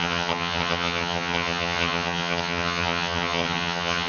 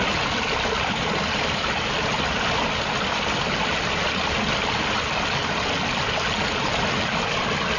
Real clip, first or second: second